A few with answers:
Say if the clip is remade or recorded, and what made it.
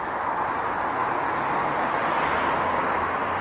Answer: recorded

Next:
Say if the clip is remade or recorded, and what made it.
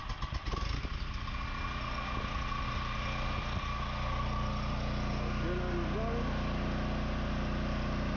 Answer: recorded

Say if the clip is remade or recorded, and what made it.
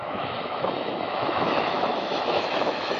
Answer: remade, autoencoder, DAC-VAE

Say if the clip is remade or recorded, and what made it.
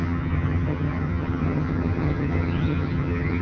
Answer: remade, vocoder, HiFi-GAN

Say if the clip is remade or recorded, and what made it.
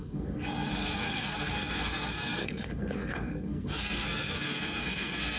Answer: remade, codec, SNAC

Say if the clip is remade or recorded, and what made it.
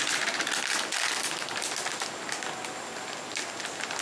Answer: recorded